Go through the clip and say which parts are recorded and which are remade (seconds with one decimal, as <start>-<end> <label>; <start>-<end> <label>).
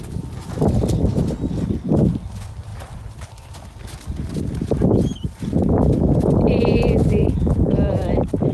0.0-8.5 recorded